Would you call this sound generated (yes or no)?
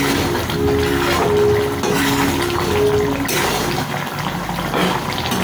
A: no